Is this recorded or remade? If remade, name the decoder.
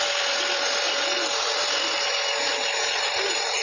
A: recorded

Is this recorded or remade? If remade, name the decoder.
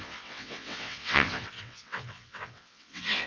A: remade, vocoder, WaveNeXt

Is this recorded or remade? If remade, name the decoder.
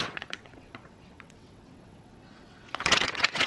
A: remade, vocoder, WaveNeXt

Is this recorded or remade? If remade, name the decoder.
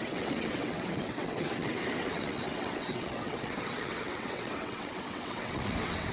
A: remade, vocoder, WaveNeXt